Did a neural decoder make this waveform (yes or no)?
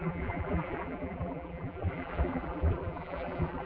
yes